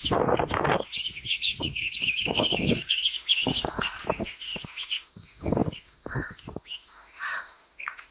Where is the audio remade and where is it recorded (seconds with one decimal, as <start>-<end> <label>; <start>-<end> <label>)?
0.0-8.1 remade